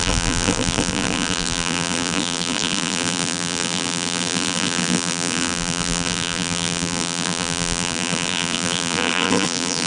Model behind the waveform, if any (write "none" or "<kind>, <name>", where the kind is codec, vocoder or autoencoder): vocoder, BigVGAN v2